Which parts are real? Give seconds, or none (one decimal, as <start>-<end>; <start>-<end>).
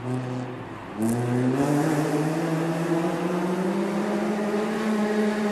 0.0-5.5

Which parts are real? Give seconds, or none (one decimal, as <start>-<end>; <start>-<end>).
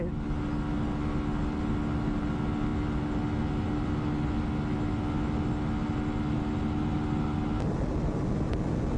0.0-9.0